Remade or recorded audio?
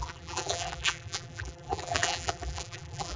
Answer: remade